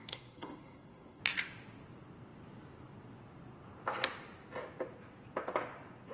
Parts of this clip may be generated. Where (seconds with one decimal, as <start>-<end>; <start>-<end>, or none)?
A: 0.0-1.2